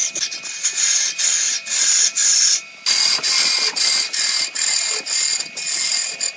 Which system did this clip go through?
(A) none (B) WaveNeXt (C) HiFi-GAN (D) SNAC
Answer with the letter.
A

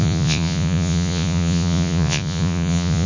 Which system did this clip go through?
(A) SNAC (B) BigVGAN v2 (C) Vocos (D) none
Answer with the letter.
C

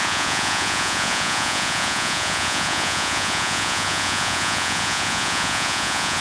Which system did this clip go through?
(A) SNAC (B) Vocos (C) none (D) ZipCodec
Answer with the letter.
B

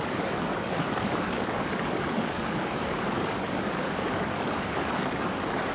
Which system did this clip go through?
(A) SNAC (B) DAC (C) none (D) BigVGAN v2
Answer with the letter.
B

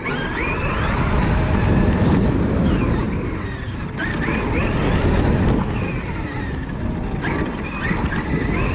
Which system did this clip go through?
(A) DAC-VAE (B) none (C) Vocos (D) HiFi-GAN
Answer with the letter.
B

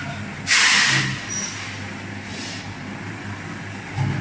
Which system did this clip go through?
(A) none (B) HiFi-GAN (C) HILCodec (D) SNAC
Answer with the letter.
A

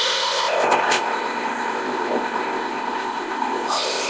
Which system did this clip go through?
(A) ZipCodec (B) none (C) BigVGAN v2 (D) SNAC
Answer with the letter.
A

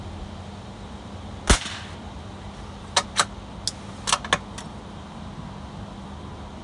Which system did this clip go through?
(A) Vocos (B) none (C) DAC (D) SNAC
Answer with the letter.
B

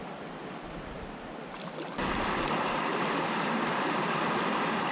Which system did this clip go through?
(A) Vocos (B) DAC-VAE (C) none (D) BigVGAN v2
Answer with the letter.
C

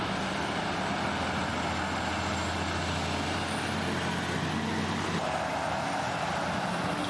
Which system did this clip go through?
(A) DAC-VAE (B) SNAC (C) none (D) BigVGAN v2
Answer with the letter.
C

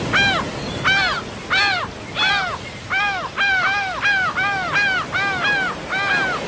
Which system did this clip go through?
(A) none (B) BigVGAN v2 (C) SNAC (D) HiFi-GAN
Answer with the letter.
A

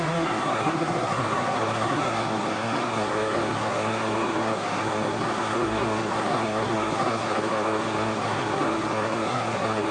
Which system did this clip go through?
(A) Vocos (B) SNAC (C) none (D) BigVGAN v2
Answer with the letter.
B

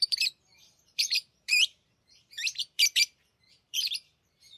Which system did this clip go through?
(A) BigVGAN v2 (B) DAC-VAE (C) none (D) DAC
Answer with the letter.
A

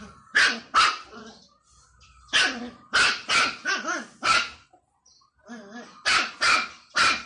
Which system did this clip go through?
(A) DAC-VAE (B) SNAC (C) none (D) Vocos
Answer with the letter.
C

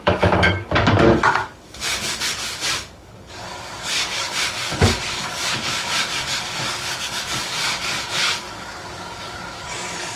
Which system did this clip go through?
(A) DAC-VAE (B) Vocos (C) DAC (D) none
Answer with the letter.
C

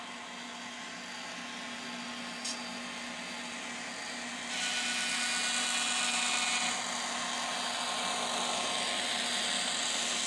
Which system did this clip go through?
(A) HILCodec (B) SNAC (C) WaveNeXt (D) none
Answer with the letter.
D